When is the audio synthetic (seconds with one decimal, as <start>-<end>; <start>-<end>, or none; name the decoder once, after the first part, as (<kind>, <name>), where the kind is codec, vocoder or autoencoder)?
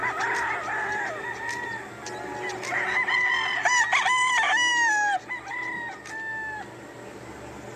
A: none